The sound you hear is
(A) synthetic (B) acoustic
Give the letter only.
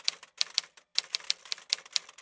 B